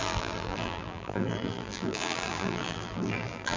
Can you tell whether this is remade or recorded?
remade